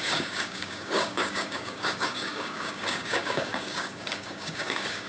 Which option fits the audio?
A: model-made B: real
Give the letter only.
A